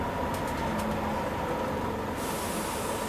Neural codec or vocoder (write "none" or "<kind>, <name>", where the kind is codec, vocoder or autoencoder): none